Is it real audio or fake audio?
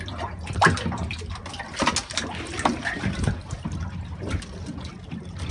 real